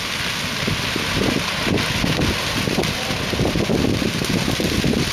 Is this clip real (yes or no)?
yes